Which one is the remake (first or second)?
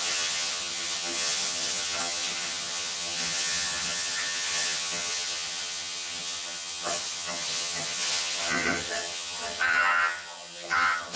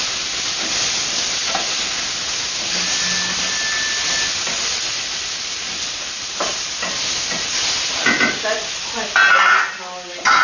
first